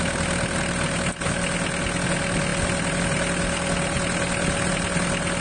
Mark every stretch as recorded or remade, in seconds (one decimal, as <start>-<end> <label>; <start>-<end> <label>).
0.0-5.4 recorded